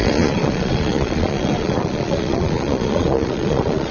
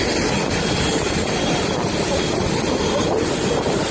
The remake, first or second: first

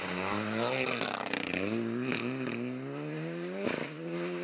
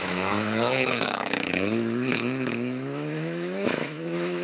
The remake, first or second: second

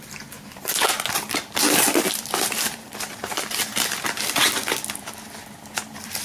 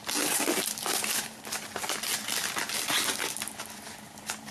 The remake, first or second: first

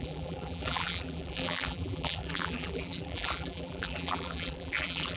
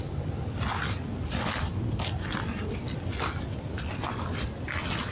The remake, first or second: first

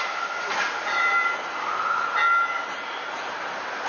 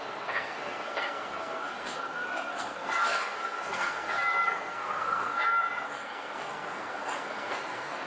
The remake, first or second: second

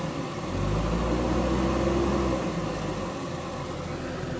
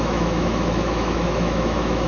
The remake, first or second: second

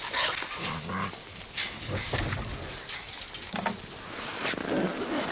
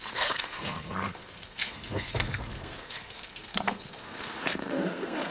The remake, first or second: second